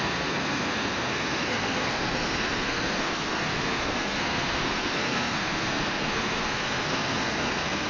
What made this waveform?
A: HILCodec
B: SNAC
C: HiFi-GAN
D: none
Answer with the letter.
B